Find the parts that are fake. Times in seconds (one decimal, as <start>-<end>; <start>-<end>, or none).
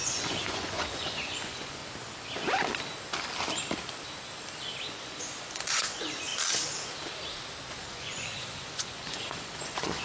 0.0-1.8; 4.9-6.3; 7.7-10.0